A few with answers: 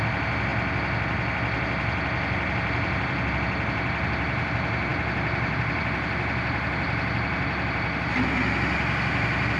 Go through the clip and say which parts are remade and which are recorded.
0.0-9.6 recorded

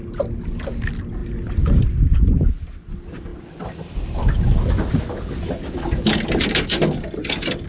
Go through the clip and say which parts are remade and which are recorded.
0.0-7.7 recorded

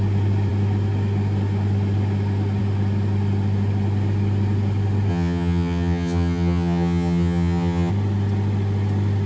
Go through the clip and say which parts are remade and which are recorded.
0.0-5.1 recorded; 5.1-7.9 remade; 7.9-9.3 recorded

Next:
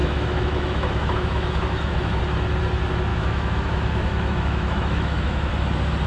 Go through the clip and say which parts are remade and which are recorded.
0.0-2.2 remade; 2.2-3.1 recorded; 3.1-5.5 remade; 5.5-6.1 recorded

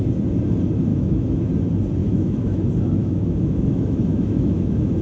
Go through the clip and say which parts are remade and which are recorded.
0.0-0.9 recorded; 0.9-1.5 remade; 1.5-2.0 recorded; 2.0-2.6 remade; 2.6-3.0 recorded; 3.0-5.0 remade

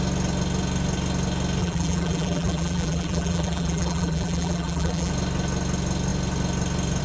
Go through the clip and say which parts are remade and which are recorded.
0.0-1.6 recorded; 1.6-5.1 remade; 5.1-7.0 recorded

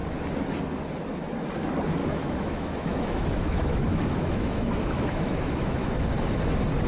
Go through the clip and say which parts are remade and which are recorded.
0.0-2.0 recorded; 2.0-6.1 remade; 6.1-6.9 recorded

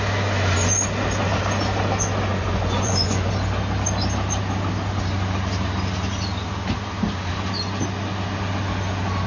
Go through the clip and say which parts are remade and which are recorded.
0.0-2.3 recorded; 2.3-3.3 remade; 3.3-9.3 recorded